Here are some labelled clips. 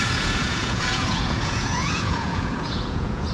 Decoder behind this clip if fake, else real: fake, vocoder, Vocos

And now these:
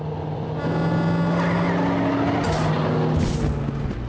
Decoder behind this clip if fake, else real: real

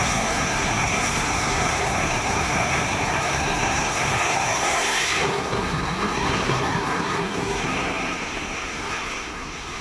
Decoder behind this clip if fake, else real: fake, codec, SNAC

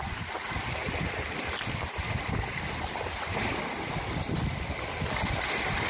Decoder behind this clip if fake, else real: real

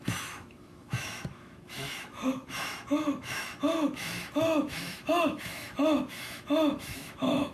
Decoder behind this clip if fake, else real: fake, autoencoder, DAC-VAE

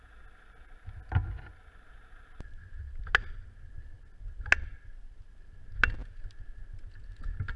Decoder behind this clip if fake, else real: real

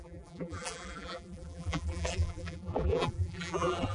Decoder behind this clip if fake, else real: fake, vocoder, BigVGAN v2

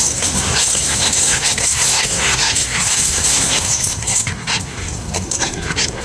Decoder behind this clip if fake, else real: fake, codec, SNAC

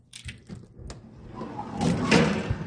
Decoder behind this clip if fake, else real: real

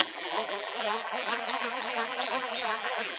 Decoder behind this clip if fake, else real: fake, vocoder, BigVGAN v2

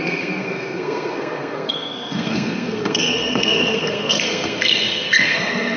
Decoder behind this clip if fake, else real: fake, codec, SNAC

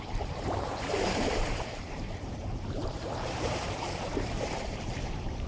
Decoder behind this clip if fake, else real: fake, vocoder, BigVGAN v2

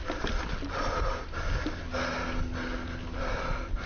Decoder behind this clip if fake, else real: real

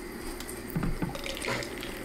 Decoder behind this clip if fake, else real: fake, vocoder, BigVGAN v2